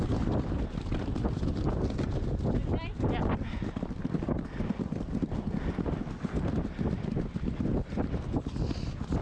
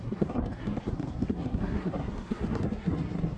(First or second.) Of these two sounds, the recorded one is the first